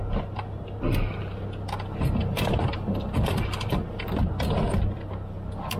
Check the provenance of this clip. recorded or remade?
recorded